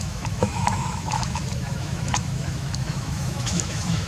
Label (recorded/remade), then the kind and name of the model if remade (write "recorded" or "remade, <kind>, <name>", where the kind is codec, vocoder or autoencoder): remade, autoencoder, DAC-VAE